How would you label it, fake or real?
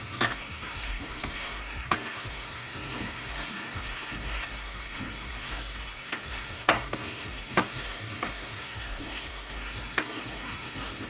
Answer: fake